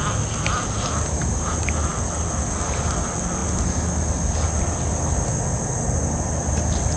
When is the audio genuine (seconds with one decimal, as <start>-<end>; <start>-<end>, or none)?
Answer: 0.0-7.0